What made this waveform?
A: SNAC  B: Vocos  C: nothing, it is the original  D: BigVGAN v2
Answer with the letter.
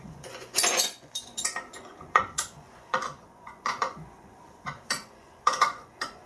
B